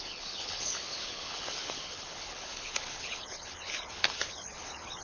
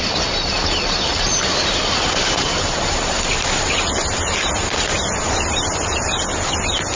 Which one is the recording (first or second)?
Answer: second